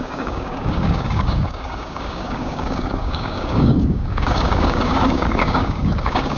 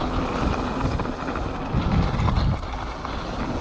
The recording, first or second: second